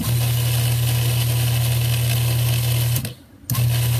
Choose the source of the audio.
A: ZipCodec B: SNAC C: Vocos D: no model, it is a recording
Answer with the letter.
D